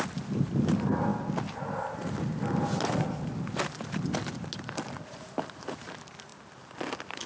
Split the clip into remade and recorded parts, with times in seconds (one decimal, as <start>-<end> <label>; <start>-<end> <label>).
0.0-7.3 recorded